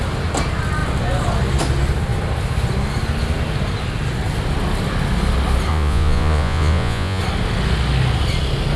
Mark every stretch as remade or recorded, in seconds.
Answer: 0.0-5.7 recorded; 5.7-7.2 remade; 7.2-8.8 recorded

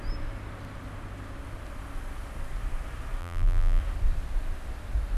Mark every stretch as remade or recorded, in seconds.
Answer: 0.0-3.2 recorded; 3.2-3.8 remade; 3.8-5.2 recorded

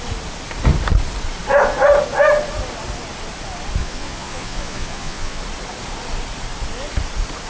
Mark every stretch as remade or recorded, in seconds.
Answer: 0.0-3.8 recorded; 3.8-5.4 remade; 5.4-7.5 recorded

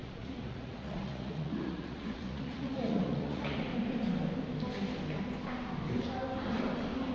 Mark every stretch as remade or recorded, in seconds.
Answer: 0.0-3.7 remade; 3.7-7.1 recorded